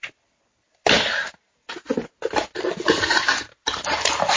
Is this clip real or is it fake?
real